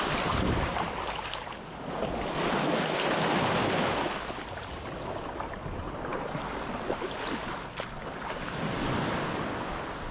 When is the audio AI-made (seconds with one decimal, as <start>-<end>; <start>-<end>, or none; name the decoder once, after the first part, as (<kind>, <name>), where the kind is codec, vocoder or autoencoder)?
none